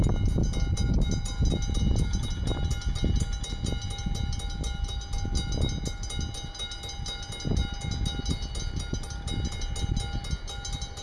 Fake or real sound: real